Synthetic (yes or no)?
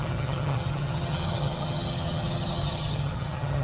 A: yes